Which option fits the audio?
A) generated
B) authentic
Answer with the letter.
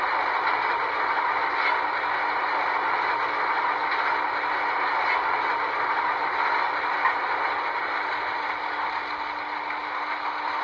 B